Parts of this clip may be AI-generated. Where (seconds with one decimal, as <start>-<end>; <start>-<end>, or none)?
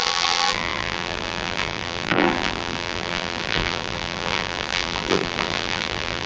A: 0.0-6.3